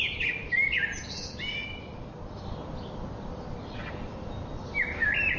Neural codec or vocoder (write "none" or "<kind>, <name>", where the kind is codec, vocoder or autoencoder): none